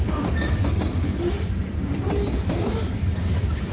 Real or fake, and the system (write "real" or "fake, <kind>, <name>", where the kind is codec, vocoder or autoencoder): fake, vocoder, BigVGAN v2